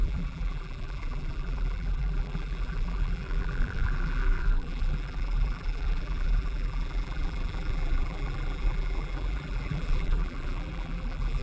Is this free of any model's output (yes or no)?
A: no